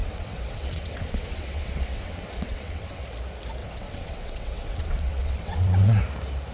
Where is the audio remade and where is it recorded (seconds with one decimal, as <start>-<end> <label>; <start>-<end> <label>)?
0.0-3.0 remade; 3.0-3.6 recorded; 3.6-6.0 remade; 6.0-6.5 recorded

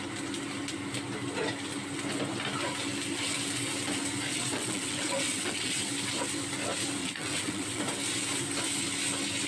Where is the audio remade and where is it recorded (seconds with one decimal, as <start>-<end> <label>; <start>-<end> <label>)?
0.0-4.3 recorded; 4.3-5.8 remade; 5.8-7.0 recorded; 7.0-7.8 remade; 7.8-9.5 recorded

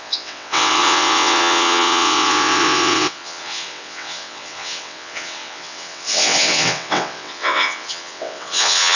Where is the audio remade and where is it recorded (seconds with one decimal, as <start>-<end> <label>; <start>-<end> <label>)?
0.0-9.0 remade

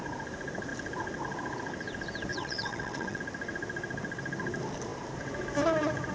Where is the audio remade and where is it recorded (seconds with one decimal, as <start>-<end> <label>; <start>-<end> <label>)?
0.0-2.3 recorded; 2.3-3.2 remade; 3.2-6.1 recorded

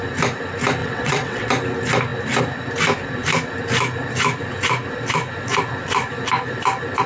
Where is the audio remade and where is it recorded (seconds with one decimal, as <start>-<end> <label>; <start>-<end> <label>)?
0.0-0.8 recorded; 0.8-1.5 remade; 1.5-7.1 recorded

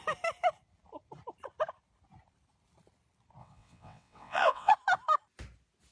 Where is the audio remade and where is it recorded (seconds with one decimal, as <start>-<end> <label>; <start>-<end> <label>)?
0.0-3.4 recorded; 3.4-4.7 remade; 4.7-5.9 recorded

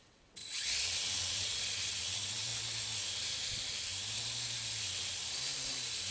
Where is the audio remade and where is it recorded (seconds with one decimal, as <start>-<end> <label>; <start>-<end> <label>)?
0.0-2.5 remade; 2.5-6.1 recorded